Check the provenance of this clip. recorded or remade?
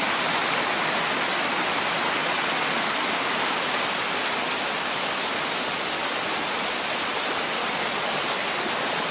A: recorded